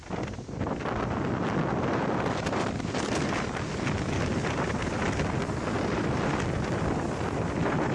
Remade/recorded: recorded